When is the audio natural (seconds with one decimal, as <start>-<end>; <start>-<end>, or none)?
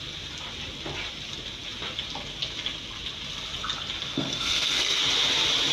0.0-4.0; 5.0-5.7